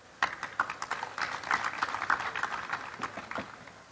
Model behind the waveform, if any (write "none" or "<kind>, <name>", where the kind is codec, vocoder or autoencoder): none